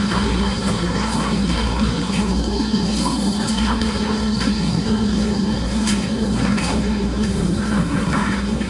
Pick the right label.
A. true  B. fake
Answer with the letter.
B